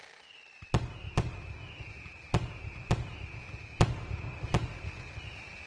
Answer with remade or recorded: recorded